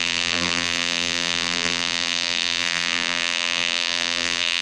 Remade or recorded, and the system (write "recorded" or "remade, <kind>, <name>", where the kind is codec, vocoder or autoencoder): remade, vocoder, BigVGAN v2